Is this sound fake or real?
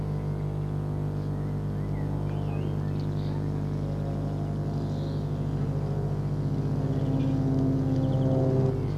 real